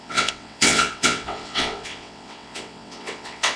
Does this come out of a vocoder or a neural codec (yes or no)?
yes